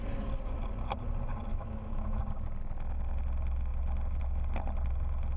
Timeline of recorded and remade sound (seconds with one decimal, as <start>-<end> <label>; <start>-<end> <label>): 0.0-1.5 recorded; 1.5-2.2 remade; 2.2-5.4 recorded